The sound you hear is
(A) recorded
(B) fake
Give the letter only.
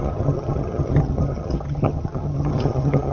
B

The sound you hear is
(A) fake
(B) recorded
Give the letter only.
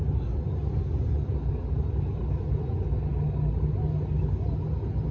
B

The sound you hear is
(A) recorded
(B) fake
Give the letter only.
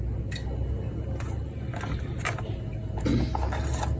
A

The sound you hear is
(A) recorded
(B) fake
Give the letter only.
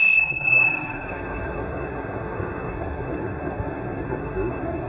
B